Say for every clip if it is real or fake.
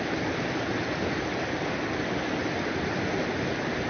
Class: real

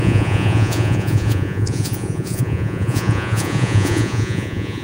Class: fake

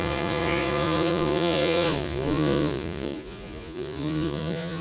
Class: fake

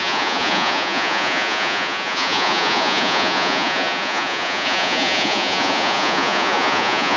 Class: fake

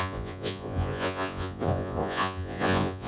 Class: fake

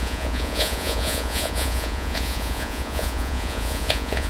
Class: fake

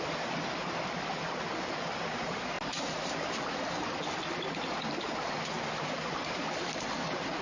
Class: real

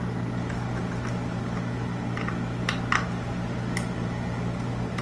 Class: real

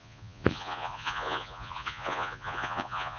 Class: fake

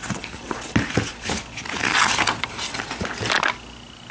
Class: real